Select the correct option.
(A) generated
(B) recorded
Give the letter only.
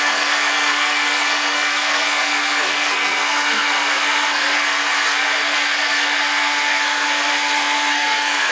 A